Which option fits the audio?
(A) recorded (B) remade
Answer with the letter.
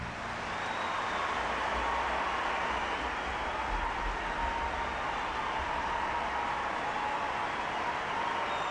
A